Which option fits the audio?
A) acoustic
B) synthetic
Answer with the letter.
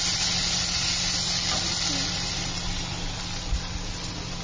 A